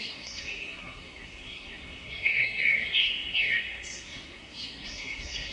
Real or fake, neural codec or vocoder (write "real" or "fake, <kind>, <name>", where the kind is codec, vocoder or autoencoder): fake, codec, SNAC